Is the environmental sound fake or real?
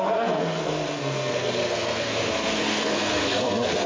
fake